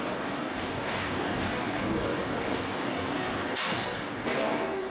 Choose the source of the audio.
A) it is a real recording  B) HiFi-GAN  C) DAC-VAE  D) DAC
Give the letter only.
D